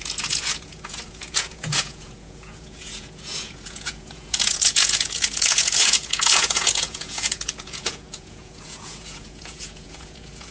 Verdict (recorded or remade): remade